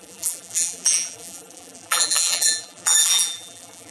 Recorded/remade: remade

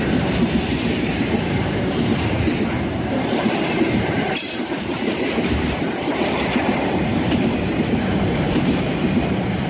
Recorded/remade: remade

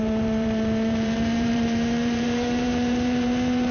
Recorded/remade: remade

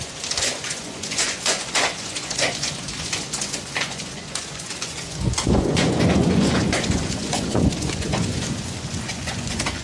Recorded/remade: remade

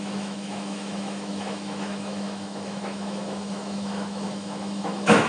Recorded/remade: remade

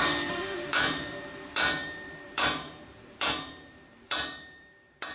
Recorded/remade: remade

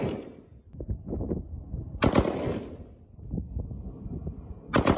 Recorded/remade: recorded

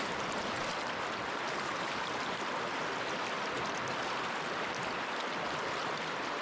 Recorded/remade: recorded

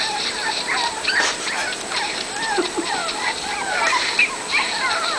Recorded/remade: remade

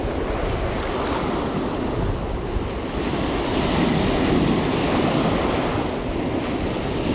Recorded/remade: recorded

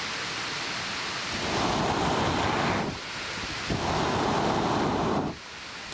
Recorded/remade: recorded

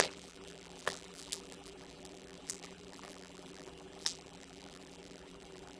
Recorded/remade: remade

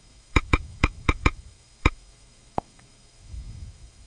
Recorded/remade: remade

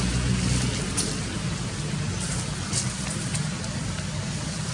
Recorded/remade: recorded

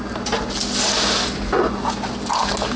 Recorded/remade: recorded